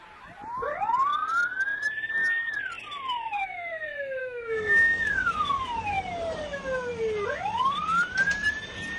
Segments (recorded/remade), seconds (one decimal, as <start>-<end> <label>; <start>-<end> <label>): 0.0-4.2 recorded; 4.2-5.3 remade; 5.3-9.0 recorded